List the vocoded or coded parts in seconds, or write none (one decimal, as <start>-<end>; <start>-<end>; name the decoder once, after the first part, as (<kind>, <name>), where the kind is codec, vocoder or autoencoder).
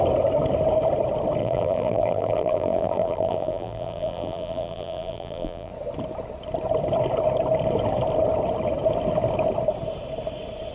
1.4-5.7 (vocoder, BigVGAN v2)